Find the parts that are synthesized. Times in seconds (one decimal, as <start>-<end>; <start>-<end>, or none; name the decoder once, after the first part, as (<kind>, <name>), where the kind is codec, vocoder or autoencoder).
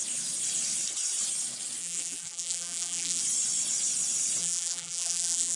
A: 1.8-3.2 (vocoder, BigVGAN v2); 4.4-5.6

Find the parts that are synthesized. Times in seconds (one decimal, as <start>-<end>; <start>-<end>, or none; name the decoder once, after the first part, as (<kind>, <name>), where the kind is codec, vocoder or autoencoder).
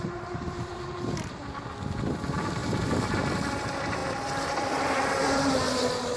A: 0.0-0.7 (vocoder, BigVGAN v2); 2.2-6.2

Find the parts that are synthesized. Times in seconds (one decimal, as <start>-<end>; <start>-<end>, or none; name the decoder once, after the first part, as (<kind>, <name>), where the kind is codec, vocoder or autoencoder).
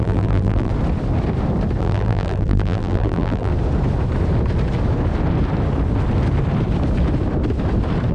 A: 0.0-0.7 (vocoder, BigVGAN v2); 1.8-3.5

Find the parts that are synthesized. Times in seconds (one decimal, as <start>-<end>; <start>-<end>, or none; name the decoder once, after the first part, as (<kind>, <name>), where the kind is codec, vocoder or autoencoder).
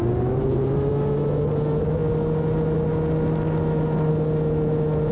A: 0.0-0.9 (vocoder, BigVGAN v2)